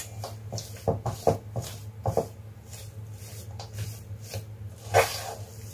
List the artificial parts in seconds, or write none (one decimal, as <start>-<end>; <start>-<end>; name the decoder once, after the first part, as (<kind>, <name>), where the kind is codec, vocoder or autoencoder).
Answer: none